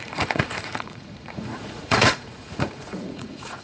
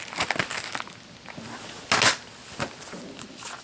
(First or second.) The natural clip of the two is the second